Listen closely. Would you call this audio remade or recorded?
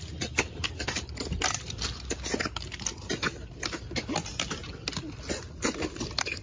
recorded